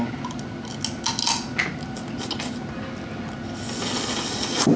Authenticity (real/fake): real